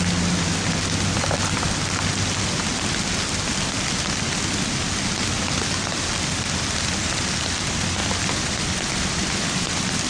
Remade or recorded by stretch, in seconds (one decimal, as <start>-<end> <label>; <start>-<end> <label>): 0.0-8.0 recorded; 8.0-10.1 remade